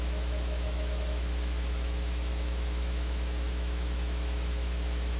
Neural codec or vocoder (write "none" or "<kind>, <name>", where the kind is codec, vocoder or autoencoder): autoencoder, DAC-VAE